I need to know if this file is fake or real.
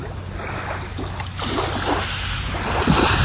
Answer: real